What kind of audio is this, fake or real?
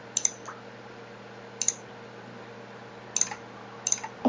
real